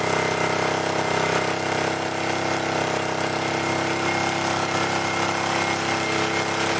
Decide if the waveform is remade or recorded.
recorded